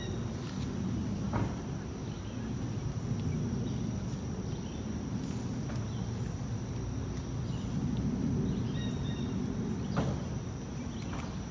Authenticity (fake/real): real